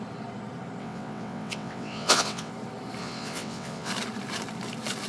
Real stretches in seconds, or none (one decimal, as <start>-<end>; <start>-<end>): 0.0-0.8; 2.5-3.0; 3.9-5.1